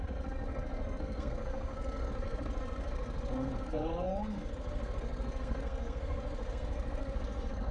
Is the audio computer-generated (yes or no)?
yes